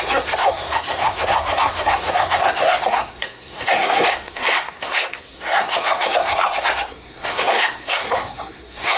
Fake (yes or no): yes